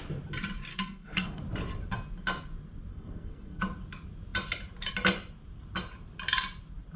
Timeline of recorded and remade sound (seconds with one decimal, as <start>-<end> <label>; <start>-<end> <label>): 0.0-0.7 recorded; 0.7-1.4 remade; 1.4-2.9 recorded; 2.9-3.6 remade; 3.6-7.0 recorded